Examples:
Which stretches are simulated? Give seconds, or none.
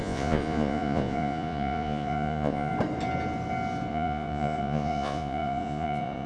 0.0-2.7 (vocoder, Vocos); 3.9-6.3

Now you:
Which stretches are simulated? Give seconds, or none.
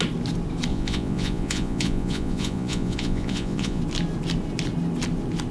0.7-3.8 (vocoder, Vocos)